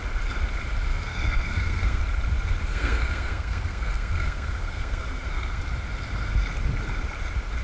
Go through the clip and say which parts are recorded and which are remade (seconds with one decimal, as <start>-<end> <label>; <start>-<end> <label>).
0.0-0.9 recorded; 0.9-2.0 remade; 2.0-2.7 recorded; 2.7-5.6 remade; 5.6-7.6 recorded